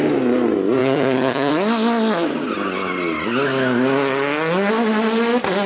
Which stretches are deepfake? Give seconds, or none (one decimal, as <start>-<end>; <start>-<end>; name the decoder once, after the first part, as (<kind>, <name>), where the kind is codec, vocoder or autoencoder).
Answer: 0.8-1.5 (vocoder, HiFi-GAN)